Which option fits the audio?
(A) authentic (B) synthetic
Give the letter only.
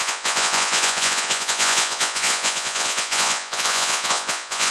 B